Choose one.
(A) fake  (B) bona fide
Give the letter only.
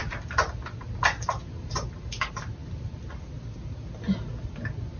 B